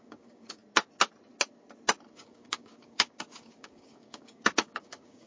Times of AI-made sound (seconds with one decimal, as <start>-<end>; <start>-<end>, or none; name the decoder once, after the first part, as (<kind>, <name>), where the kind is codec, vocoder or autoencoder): 0.0-0.6 (codec, DAC); 2.1-5.3

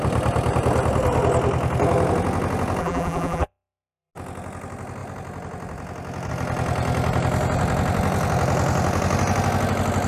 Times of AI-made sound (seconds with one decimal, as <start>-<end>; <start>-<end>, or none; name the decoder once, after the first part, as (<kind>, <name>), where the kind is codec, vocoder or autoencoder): 2.8-4.1 (vocoder, BigVGAN v2)

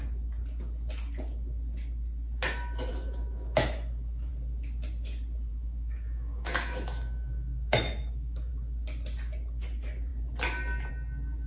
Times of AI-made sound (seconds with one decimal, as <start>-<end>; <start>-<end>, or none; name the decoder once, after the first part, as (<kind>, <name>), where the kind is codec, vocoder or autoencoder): 2.9-4.3 (autoencoder, DAC-VAE); 5.5-8.5

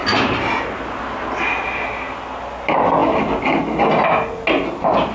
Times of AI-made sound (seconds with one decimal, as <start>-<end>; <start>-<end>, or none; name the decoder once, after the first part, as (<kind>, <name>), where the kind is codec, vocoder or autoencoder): none